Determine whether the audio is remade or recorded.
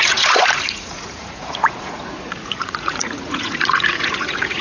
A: remade